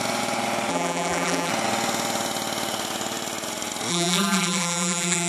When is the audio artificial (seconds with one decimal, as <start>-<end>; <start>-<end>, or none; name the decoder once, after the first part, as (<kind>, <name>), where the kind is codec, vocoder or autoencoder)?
0.7-1.5 (vocoder, BigVGAN v2); 3.9-5.3